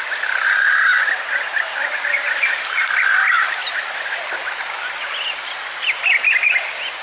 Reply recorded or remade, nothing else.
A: recorded